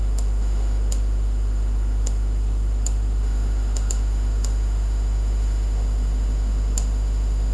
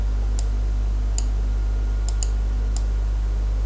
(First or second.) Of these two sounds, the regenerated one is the first